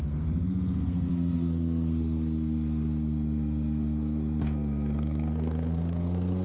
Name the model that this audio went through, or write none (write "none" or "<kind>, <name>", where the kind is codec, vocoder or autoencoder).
codec, SNAC